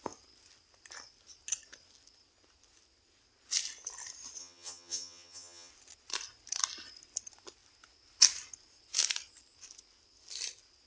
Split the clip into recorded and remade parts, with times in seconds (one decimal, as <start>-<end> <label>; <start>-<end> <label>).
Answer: 0.0-4.4 recorded; 4.4-5.7 remade; 5.7-10.9 recorded

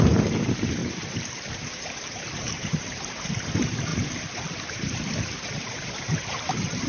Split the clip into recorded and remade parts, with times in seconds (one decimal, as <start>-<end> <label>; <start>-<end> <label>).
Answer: 0.0-6.9 remade

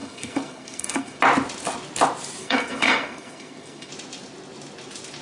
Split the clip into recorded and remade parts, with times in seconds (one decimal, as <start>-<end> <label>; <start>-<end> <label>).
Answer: 0.0-1.2 remade; 1.2-2.4 recorded; 2.4-3.9 remade; 3.9-5.2 recorded

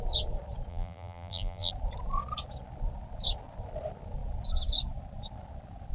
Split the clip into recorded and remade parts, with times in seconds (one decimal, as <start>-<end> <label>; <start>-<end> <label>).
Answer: 0.0-0.7 recorded; 0.7-1.7 remade; 1.7-5.9 recorded

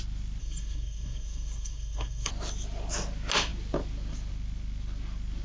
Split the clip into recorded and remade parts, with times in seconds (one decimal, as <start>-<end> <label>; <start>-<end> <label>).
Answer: 0.0-0.4 recorded; 0.4-2.3 remade; 2.3-5.4 recorded

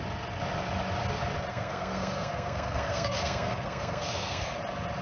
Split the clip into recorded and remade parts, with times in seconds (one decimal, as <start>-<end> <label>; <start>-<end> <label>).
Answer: 0.0-1.5 recorded; 1.5-4.5 remade; 4.5-5.0 recorded

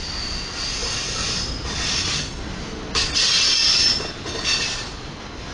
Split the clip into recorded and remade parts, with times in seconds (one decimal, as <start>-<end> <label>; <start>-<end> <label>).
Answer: 0.0-5.5 recorded